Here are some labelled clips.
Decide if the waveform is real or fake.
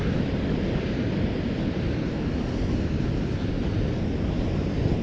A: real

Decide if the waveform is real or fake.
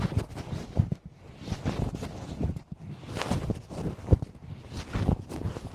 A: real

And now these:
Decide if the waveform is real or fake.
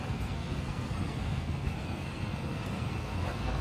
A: fake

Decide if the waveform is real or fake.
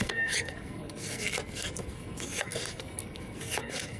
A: fake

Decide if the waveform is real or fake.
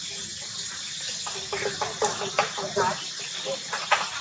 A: real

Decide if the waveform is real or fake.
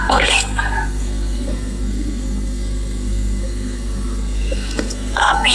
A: fake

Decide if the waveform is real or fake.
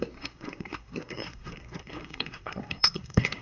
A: fake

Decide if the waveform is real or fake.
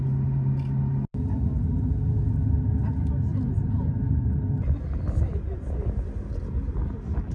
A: real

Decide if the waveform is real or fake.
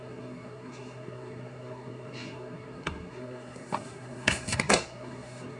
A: fake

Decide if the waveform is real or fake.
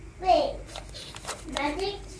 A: real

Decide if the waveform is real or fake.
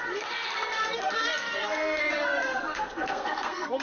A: fake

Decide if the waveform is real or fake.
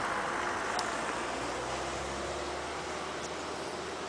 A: real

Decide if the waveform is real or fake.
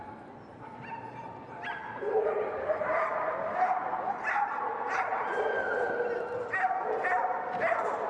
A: real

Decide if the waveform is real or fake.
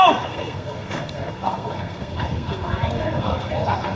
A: fake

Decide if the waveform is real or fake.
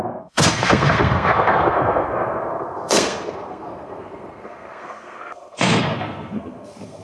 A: fake